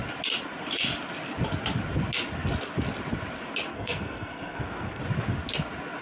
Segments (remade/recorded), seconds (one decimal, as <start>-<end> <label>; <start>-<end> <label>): 0.0-3.7 recorded; 3.7-5.0 remade; 5.0-6.0 recorded

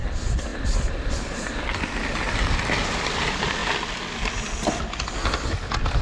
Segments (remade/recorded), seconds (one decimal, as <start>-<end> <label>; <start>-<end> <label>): 0.0-6.0 recorded

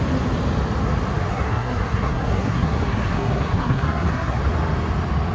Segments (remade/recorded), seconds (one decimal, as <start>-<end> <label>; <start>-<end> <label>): 0.0-1.3 recorded; 1.3-4.4 remade; 4.4-5.3 recorded